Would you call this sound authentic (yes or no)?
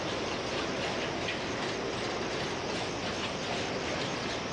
yes